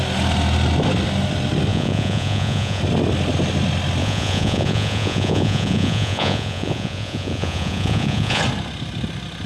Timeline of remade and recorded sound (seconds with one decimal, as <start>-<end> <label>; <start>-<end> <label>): 0.0-1.7 recorded; 1.7-2.8 remade; 2.8-4.0 recorded; 4.0-8.4 remade; 8.4-9.5 recorded